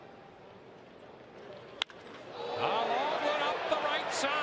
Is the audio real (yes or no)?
yes